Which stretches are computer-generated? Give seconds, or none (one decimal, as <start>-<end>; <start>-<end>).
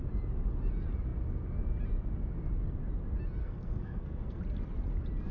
3.4-4.4